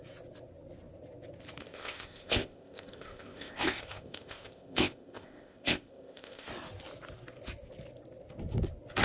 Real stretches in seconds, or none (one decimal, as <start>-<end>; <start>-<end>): 0.0-1.6; 6.5-9.0